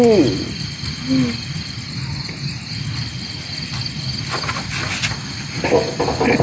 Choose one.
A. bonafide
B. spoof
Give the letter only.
A